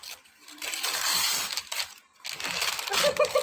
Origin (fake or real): real